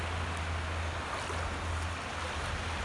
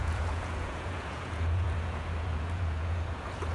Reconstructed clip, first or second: second